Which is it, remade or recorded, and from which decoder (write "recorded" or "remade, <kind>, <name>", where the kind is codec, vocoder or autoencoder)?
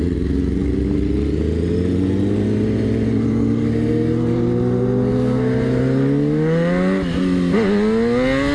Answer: recorded